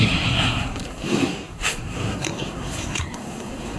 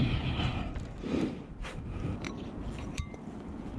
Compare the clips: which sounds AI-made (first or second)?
first